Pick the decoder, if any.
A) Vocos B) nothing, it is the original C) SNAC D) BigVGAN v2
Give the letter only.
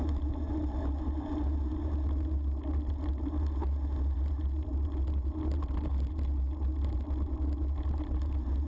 B